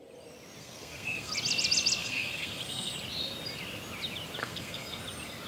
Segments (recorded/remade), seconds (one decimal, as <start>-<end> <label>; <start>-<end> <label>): 0.0-0.6 recorded; 0.6-1.3 remade; 1.3-2.0 recorded; 2.0-2.9 remade; 2.9-4.4 recorded; 4.4-5.0 remade; 5.0-5.5 recorded